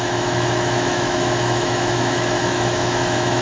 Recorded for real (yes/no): no